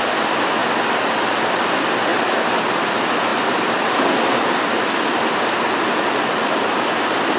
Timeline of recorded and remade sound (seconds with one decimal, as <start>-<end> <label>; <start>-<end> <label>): 0.0-7.4 recorded